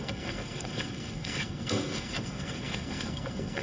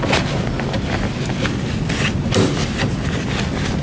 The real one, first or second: second